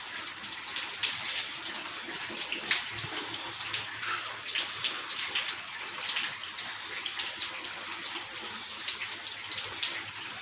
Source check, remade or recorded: recorded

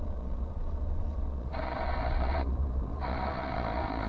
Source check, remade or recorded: remade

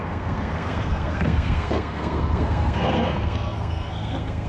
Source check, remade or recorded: remade